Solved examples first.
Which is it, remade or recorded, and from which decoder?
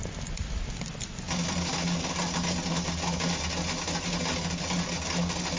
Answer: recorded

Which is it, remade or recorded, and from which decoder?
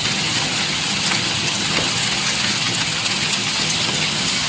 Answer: remade, vocoder, HiFi-GAN